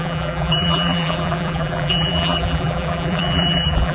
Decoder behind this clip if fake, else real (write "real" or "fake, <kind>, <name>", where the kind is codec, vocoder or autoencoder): fake, vocoder, BigVGAN v2